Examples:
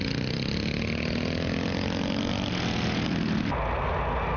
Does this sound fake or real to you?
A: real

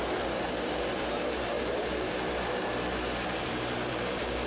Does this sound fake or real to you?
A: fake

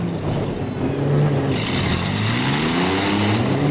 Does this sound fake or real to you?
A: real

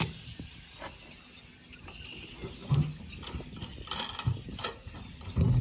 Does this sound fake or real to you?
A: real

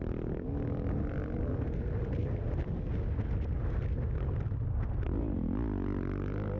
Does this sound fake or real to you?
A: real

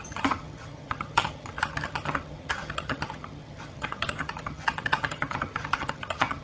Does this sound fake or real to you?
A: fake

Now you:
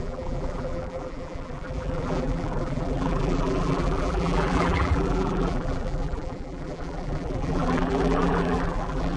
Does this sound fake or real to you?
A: fake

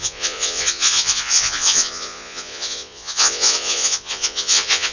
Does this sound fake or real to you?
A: fake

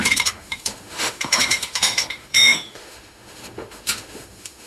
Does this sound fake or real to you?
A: fake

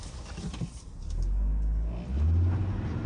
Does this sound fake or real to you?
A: real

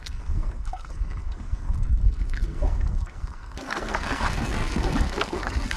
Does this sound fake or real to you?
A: fake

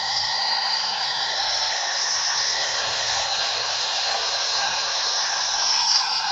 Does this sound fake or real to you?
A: fake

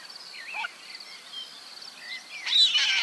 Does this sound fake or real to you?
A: real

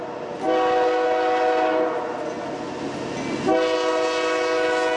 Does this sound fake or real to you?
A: real